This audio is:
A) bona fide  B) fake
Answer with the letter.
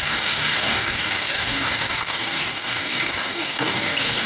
B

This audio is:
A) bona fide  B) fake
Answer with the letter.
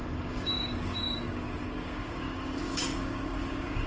B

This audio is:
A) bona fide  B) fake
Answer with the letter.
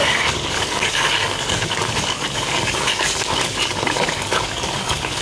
B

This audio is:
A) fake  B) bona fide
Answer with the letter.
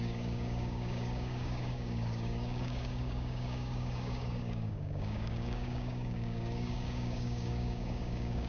A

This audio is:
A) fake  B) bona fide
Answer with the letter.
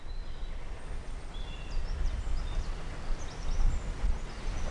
B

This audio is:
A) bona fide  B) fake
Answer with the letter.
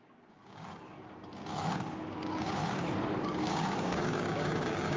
B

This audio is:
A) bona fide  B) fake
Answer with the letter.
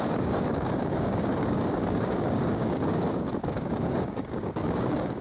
B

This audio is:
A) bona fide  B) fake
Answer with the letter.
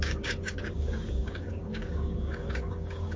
B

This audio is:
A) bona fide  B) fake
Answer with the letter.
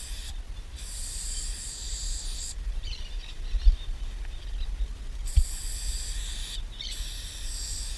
A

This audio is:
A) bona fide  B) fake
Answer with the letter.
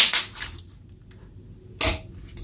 A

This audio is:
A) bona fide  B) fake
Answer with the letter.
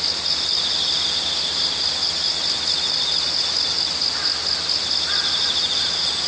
A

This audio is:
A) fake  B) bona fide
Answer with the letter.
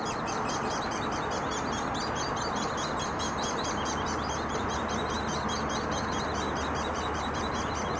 B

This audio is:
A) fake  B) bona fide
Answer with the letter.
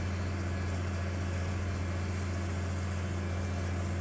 B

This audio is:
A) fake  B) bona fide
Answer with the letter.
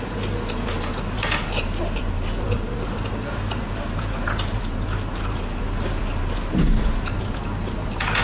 B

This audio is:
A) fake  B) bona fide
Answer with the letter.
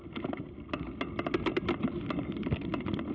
B